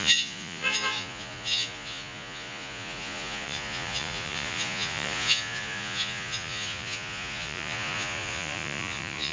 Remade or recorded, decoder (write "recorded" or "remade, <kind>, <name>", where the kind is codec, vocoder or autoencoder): remade, vocoder, Vocos